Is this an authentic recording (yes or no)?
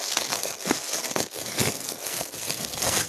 no